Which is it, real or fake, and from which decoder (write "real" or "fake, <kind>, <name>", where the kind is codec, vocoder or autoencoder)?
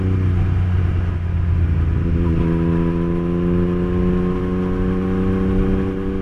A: real